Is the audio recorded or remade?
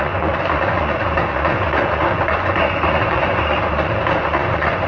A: remade